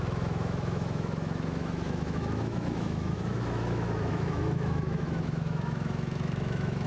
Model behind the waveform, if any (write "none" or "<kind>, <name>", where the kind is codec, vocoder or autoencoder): autoencoder, DAC-VAE